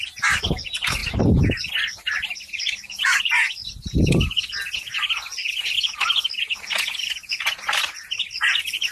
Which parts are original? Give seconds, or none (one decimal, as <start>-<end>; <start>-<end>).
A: 0.0-1.0; 3.2-3.6; 4.5-8.9